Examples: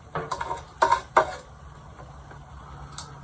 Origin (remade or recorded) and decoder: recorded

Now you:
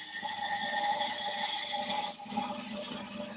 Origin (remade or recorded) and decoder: recorded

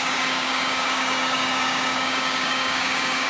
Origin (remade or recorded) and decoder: remade, codec, DAC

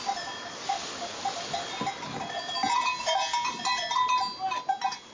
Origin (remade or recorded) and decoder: recorded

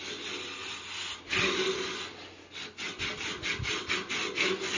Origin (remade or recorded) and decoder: recorded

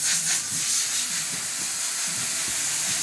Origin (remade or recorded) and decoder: recorded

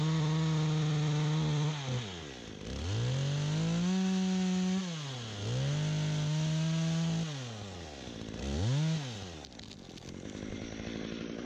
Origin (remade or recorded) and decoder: recorded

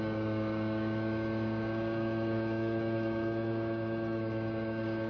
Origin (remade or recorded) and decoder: remade, codec, DAC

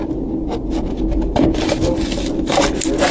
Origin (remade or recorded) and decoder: recorded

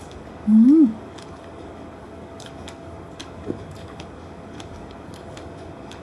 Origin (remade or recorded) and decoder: remade, codec, DAC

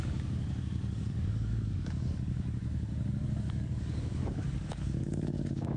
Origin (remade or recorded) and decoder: remade, codec, DAC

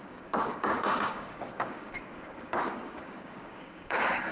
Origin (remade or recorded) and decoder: remade, codec, DAC